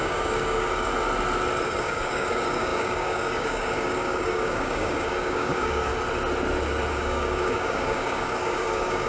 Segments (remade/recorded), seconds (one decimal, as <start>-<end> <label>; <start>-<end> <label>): 0.0-0.9 remade; 0.9-1.8 recorded; 1.8-5.9 remade; 5.9-6.9 recorded; 6.9-9.1 remade